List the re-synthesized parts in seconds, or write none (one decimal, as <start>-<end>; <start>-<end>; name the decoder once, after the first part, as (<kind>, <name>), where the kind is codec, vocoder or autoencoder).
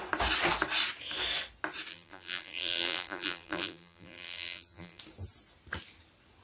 1.9-5.0 (vocoder, BigVGAN v2)